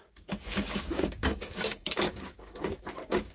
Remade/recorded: remade